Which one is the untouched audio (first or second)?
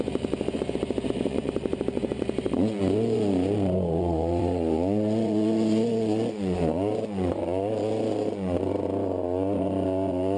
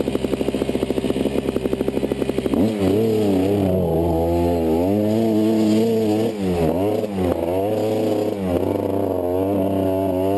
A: second